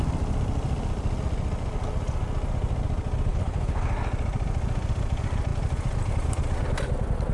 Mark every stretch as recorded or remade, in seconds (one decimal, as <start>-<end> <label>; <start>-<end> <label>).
0.0-3.3 recorded; 3.3-3.9 remade; 3.9-7.3 recorded